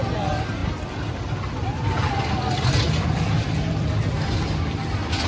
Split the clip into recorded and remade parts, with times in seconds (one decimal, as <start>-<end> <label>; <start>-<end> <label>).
0.0-5.3 recorded